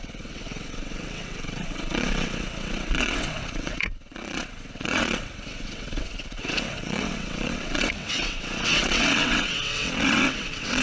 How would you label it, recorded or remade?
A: remade